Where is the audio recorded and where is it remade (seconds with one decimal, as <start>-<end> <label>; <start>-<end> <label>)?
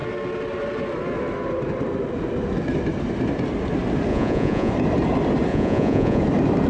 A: 0.0-4.1 recorded; 4.1-4.7 remade; 4.7-5.5 recorded; 5.5-6.2 remade; 6.2-6.7 recorded